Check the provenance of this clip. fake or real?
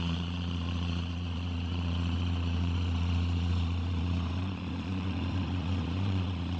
fake